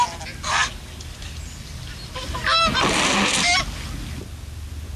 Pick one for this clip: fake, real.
real